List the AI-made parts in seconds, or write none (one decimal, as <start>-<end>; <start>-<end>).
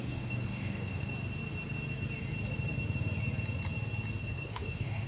0.0-1.1; 4.2-5.1